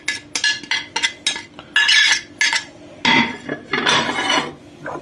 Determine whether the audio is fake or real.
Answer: real